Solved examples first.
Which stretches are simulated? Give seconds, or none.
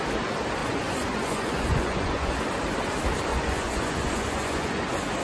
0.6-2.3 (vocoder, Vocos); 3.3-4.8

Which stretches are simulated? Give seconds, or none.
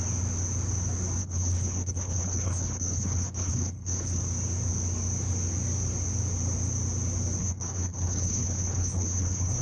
1.2-4.2 (codec, HILCodec); 7.4-9.6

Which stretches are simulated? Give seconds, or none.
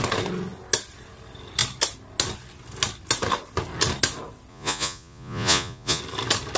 4.5-6.0 (vocoder, Vocos)